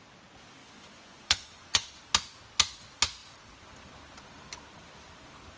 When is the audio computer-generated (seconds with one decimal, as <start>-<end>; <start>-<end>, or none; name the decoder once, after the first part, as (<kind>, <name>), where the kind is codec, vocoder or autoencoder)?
0.6-2.0 (vocoder, Vocos)